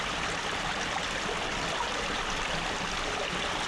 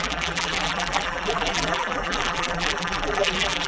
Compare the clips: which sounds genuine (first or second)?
first